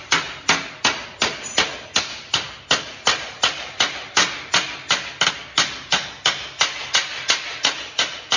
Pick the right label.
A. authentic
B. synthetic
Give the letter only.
A